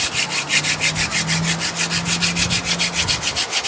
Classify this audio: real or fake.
real